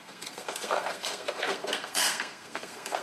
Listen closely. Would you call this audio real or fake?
fake